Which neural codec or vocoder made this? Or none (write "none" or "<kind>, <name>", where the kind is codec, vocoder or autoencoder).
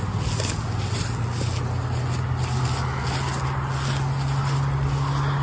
none